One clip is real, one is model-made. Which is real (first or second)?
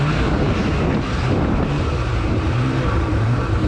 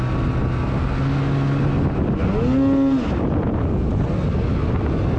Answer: second